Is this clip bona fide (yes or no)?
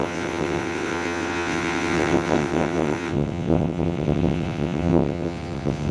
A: no